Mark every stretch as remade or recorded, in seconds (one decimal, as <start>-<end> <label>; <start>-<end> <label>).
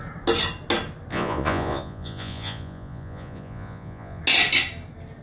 0.0-1.1 recorded; 1.1-4.2 remade; 4.2-5.2 recorded